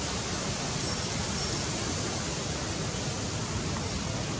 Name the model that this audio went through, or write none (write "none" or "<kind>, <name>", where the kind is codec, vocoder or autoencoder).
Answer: none